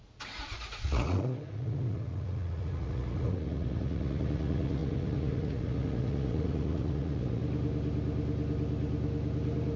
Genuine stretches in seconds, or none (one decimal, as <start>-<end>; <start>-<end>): 7.4-9.8